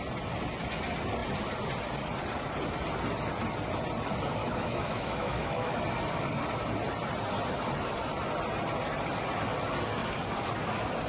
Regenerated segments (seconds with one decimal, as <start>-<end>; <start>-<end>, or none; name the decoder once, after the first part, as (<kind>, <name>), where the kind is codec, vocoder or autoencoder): 4.4-5.8 (autoencoder, DAC-VAE)